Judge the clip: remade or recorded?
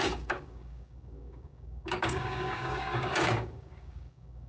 remade